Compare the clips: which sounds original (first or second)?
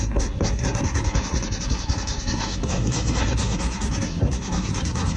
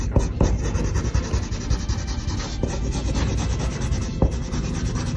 second